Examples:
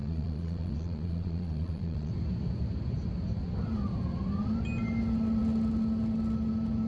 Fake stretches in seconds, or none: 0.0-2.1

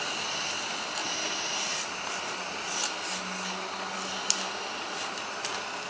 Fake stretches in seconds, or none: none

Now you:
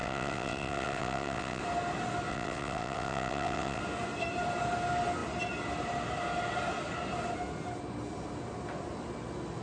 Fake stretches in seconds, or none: 0.0-1.6; 2.3-3.8

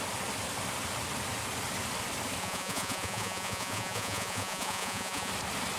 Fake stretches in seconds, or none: 2.4-5.3